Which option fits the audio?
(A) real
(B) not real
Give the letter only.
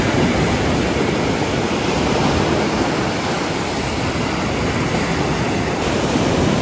A